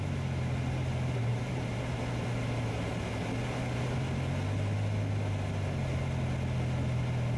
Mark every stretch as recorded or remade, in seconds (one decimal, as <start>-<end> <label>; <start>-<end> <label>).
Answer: 0.0-1.3 recorded; 1.3-2.0 remade; 2.0-7.4 recorded